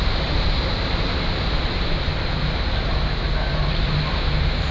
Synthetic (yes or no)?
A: yes